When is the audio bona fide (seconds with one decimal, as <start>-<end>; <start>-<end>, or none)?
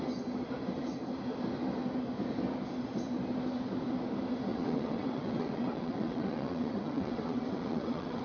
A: 0.0-4.5